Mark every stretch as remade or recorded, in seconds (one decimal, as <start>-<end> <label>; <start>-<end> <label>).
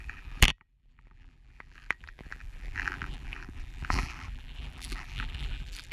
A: 0.0-5.9 remade